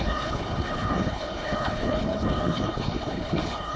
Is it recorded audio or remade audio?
remade